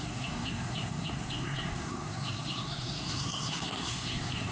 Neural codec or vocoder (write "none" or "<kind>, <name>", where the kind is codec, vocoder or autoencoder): codec, SNAC